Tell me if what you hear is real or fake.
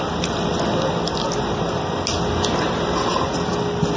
real